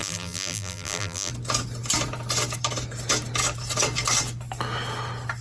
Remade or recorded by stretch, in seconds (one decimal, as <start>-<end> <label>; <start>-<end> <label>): 0.0-1.3 remade; 1.3-5.4 recorded